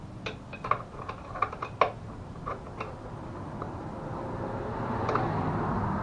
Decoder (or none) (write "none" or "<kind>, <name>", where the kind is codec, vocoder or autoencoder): none